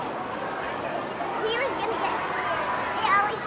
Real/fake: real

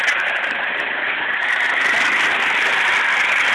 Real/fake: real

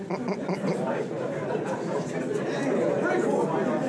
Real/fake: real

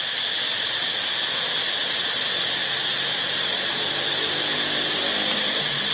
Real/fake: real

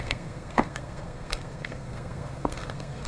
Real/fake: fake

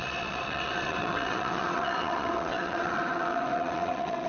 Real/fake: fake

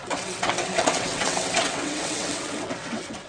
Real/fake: fake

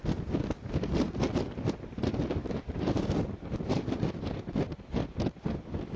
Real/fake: real